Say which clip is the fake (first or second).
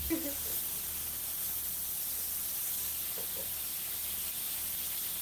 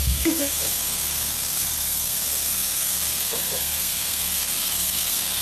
second